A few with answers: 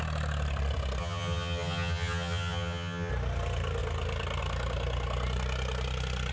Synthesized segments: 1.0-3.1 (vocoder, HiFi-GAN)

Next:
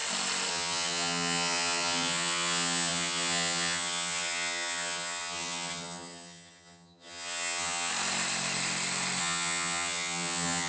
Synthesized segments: 0.5-7.9 (vocoder, HiFi-GAN); 9.2-10.7

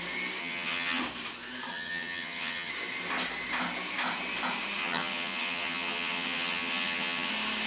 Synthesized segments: 0.4-1.0 (vocoder, HiFi-GAN); 1.7-2.7; 4.8-7.3

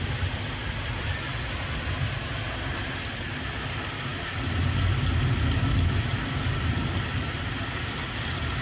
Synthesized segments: none

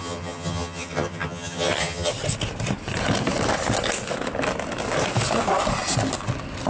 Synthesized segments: 0.0-2.1 (vocoder, HiFi-GAN)

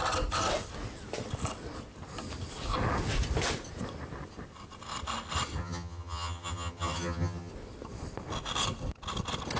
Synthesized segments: 5.6-7.5 (vocoder, HiFi-GAN)

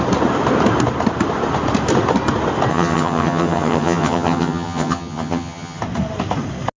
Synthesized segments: 2.7-5.8 (vocoder, HiFi-GAN)

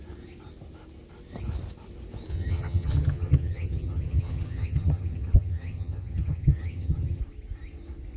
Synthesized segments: 2.3-7.2 (vocoder, HiFi-GAN)